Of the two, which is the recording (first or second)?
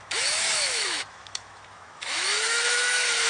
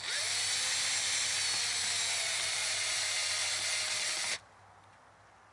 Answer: second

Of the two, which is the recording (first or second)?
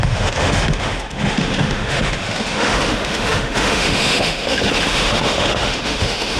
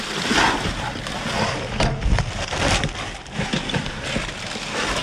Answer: second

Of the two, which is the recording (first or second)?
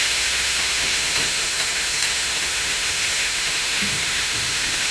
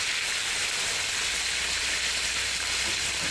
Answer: second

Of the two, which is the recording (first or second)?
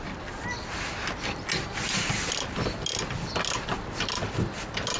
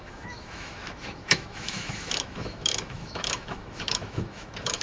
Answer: first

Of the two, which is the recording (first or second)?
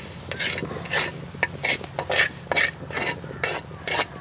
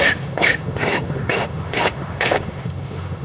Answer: first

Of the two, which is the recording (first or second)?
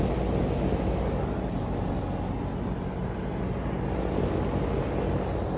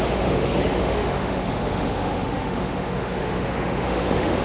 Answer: first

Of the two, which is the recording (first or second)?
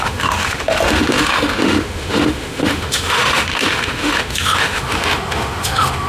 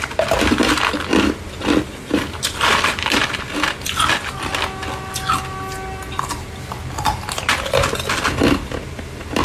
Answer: second